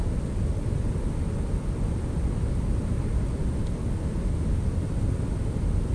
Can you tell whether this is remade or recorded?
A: recorded